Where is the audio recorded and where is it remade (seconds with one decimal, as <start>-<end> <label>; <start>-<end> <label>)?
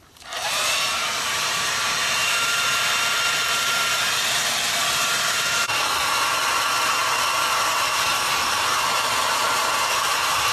0.0-10.5 remade